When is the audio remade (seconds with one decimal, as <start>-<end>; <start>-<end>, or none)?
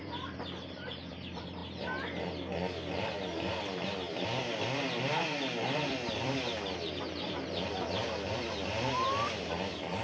0.0-1.6; 5.0-10.0